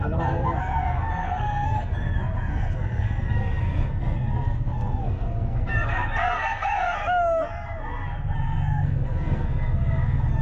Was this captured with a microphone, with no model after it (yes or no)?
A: no